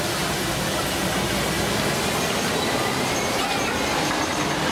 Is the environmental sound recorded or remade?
recorded